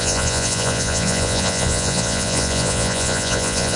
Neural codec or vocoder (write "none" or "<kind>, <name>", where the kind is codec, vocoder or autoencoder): vocoder, Vocos